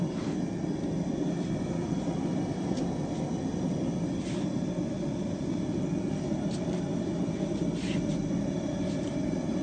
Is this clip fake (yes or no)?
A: no